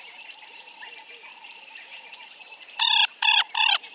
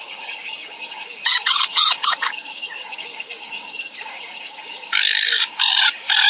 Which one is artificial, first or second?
second